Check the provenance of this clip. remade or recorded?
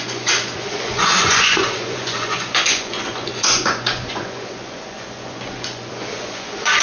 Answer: remade